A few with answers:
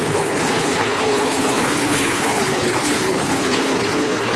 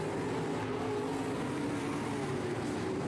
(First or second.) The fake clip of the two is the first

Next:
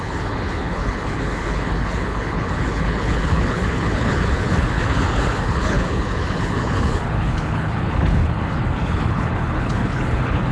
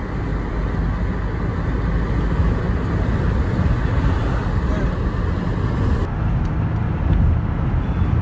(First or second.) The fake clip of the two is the first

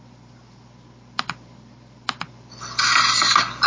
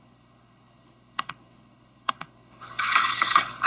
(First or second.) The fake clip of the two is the second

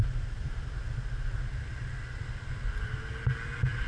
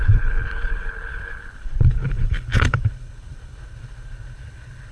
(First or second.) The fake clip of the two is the second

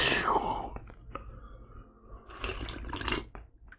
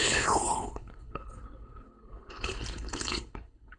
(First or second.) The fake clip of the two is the second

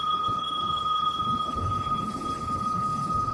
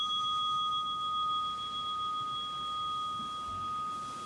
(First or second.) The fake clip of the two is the first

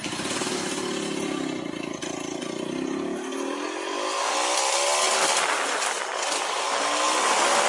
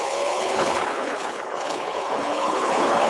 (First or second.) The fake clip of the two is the second